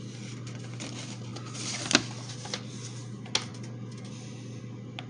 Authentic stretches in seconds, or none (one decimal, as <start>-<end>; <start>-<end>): 0.0-5.1

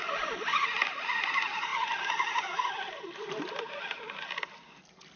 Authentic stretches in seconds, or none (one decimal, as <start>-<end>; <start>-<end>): 0.0-5.2

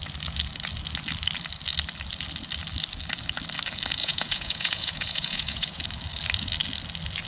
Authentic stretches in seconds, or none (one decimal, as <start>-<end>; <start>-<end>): 0.0-4.0; 5.8-7.3

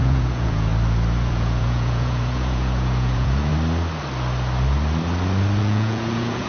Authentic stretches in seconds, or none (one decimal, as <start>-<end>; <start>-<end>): 0.7-1.3; 3.5-5.6

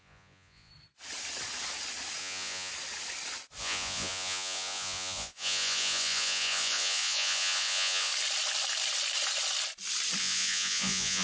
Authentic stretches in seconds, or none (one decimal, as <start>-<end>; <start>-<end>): 0.7-2.2; 2.7-3.6; 8.1-10.2

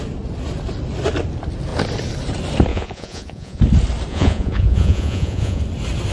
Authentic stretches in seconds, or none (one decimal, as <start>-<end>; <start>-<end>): 0.0-2.7; 3.6-4.1; 5.6-6.1

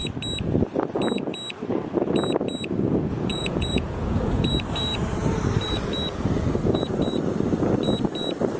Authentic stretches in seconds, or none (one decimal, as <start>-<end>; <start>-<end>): 0.0-3.3; 4.5-8.6

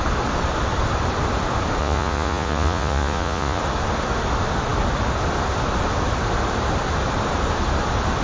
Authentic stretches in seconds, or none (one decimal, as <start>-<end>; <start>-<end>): 0.0-1.8; 3.6-8.2